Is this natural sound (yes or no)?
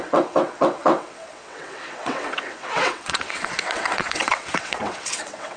no